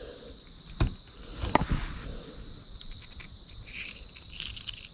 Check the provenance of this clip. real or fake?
real